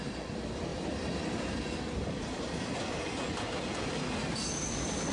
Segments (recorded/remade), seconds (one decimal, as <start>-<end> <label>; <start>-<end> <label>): 0.0-5.1 recorded